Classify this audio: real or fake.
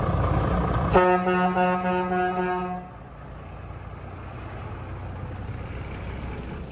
real